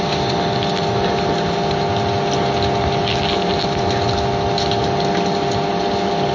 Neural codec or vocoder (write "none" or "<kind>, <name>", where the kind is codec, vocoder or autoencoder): none